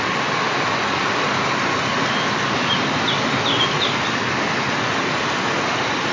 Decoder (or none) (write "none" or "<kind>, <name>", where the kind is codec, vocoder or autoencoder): none